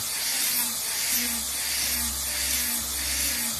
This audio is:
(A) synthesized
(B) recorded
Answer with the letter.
B